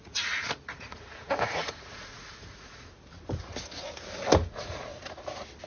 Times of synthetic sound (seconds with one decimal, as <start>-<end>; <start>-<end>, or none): 0.0-2.9; 4.5-4.9